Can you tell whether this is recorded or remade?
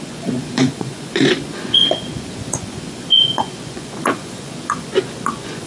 remade